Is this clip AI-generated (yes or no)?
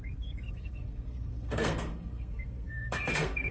yes